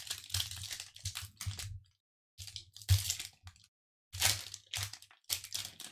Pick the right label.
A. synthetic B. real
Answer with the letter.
B